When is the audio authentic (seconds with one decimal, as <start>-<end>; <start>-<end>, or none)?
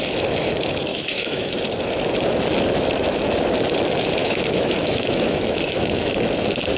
0.0-0.9; 1.6-4.2; 6.2-6.8